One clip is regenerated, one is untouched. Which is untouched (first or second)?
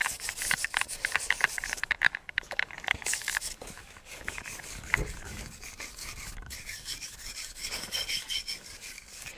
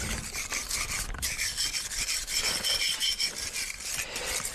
second